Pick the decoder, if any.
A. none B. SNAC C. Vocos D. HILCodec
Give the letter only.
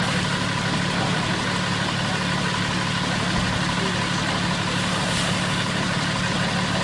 A